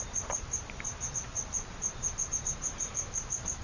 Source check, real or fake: fake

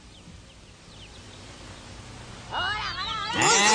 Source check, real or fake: real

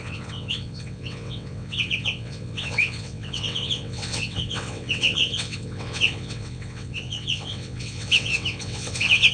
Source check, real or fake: fake